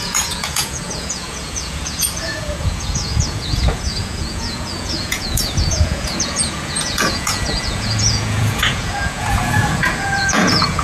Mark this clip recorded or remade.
remade